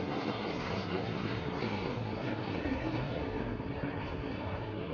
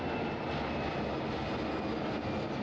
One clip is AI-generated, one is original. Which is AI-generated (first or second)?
first